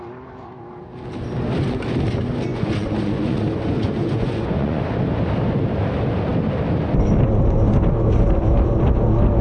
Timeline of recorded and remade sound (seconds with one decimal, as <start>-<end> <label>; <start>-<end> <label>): 0.0-2.5 recorded; 2.5-4.8 remade; 4.8-9.4 recorded